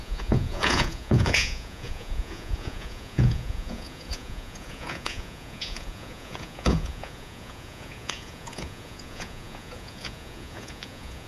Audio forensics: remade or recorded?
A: remade